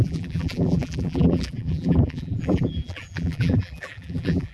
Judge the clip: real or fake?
fake